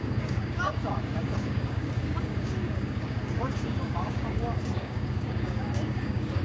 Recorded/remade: remade